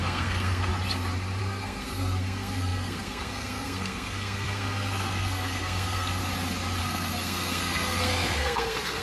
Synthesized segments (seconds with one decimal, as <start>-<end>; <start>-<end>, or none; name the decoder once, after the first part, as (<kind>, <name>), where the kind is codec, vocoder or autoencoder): 0.0-0.7 (codec, SNAC); 1.4-6.2; 6.8-9.0